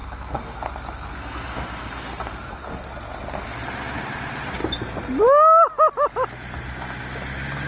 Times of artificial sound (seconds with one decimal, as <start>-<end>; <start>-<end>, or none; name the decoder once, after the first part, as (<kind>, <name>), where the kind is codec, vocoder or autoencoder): 0.0-0.6 (codec, SNAC); 1.2-2.9